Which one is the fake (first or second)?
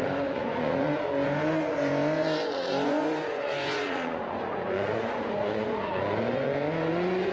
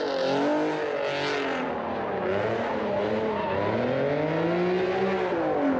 first